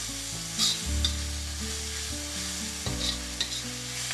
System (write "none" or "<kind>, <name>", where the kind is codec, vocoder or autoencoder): none